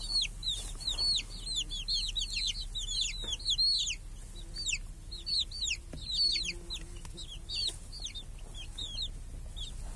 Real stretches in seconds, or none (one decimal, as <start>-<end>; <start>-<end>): 0.0-0.4; 1.0-10.0